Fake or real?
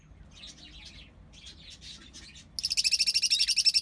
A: real